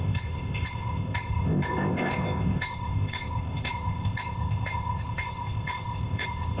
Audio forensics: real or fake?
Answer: fake